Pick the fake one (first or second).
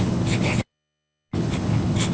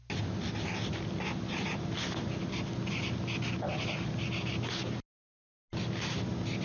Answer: first